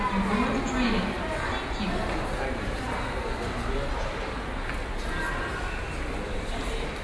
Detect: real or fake real